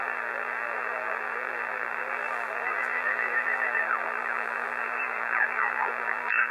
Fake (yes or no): yes